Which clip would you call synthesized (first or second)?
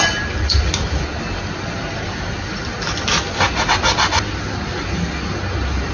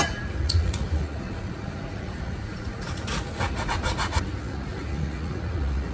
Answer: second